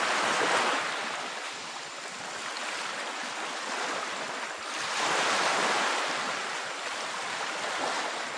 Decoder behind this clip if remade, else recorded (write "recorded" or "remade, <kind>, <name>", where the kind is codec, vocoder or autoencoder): recorded